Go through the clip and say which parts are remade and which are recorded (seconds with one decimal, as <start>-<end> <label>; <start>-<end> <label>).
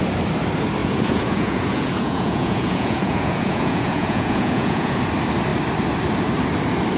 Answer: 0.0-0.8 recorded; 0.8-5.0 remade; 5.0-7.0 recorded